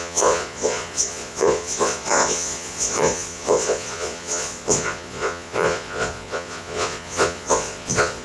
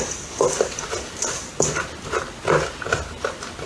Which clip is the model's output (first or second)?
first